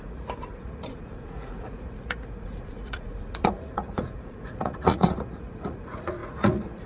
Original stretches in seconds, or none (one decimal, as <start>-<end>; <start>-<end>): none